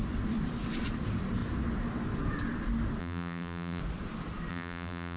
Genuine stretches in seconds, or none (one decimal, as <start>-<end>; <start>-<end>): 0.0-3.0; 3.8-4.5